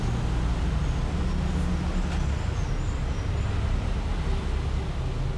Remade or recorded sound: recorded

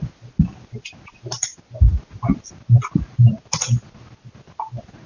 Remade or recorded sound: recorded